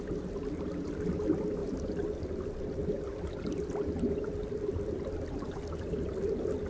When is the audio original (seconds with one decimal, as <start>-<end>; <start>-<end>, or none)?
0.0-6.7